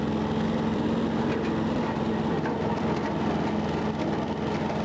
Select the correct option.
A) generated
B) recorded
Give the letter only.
B